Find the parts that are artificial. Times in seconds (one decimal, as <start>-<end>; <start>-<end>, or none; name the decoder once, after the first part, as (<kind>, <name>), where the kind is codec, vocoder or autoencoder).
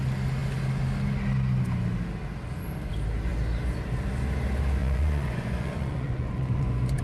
4.8-7.0 (vocoder, Vocos)